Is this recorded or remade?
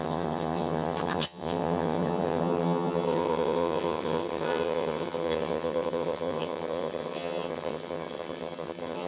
remade